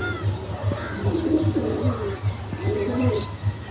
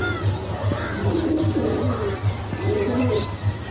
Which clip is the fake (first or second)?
second